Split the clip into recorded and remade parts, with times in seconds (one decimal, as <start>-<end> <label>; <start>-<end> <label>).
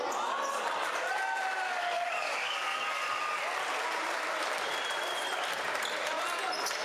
0.0-1.8 recorded; 1.8-3.4 remade; 3.4-6.8 recorded